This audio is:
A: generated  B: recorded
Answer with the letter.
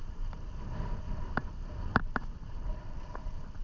A